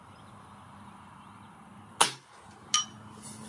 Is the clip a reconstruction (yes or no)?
no